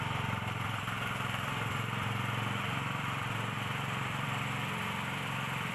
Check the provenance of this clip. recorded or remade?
remade